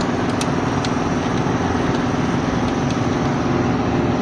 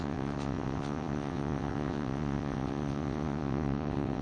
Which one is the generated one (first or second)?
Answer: second